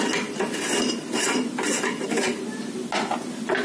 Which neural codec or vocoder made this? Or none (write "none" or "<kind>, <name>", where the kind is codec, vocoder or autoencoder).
none